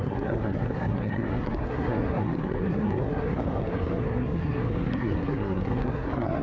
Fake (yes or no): yes